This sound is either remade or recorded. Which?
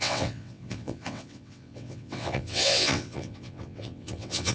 remade